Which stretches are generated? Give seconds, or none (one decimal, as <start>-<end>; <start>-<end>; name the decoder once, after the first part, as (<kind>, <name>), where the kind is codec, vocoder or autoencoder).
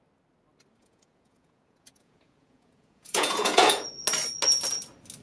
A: 0.8-3.9 (vocoder, Vocos)